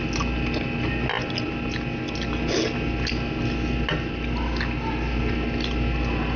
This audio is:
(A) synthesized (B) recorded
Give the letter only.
B